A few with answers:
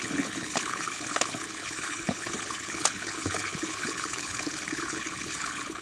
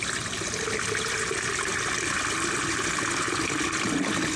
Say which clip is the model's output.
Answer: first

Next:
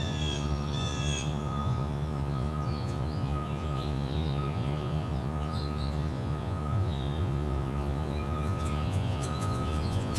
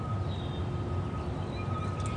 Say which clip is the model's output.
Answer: first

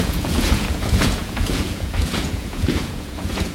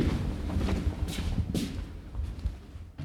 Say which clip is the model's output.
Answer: first